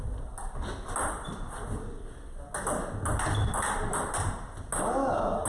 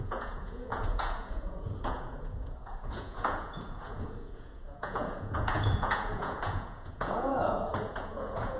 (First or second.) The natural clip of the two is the first